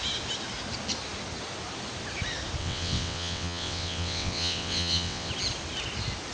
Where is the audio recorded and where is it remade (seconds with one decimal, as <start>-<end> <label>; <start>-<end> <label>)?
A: 0.0-2.6 recorded; 2.6-5.3 remade; 5.3-6.3 recorded

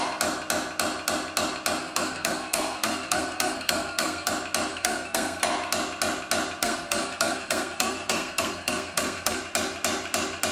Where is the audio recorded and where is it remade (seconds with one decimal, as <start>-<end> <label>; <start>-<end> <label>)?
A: 0.0-1.8 recorded; 1.8-4.3 remade; 4.3-4.7 recorded; 4.7-5.4 remade; 5.4-6.6 recorded; 6.6-9.4 remade; 9.4-10.5 recorded

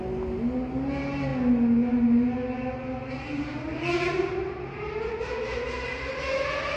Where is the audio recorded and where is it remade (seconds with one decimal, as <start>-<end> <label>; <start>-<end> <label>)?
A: 0.0-6.8 recorded

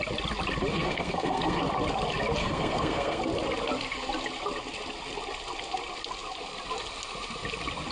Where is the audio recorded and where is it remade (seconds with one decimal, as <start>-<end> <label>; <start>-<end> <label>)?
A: 0.0-0.7 recorded; 0.7-1.6 remade; 1.6-2.4 recorded; 2.4-3.2 remade; 3.2-7.9 recorded

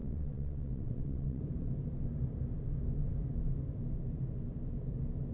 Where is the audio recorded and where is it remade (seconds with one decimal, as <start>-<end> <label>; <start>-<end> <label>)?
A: 0.0-1.4 remade; 1.4-5.3 recorded

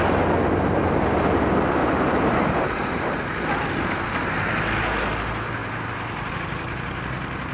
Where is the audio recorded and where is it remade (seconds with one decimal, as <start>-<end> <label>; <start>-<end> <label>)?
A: 0.0-1.8 recorded; 1.8-3.0 remade; 3.0-7.5 recorded